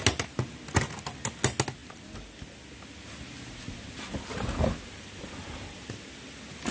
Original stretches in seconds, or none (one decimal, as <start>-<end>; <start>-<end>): 0.0-6.7